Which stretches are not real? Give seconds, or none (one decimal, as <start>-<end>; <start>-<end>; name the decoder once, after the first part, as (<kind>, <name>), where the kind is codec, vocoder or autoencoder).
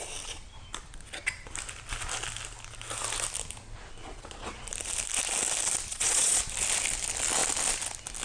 4.0-4.6 (vocoder, Vocos); 5.9-6.4